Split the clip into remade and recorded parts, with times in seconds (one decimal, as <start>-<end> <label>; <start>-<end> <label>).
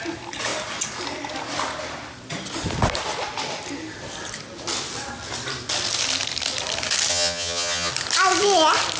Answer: 0.0-7.1 recorded; 7.1-7.9 remade; 7.9-9.0 recorded